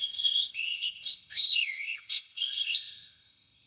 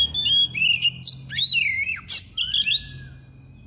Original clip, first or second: second